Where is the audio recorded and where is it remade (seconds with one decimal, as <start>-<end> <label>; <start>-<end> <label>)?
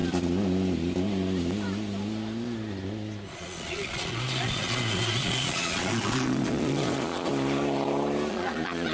0.0-3.3 recorded; 3.3-7.3 remade; 7.3-8.3 recorded; 8.3-8.9 remade